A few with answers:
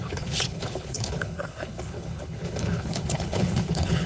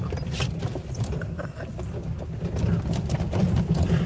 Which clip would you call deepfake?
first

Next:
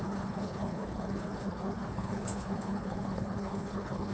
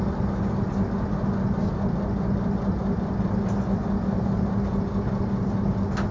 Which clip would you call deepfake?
first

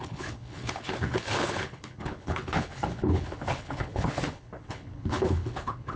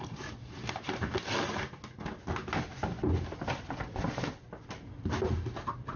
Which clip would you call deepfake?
first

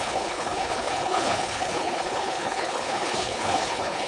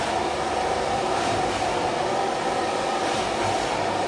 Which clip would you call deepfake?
first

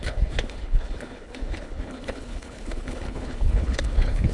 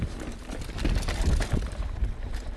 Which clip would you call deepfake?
first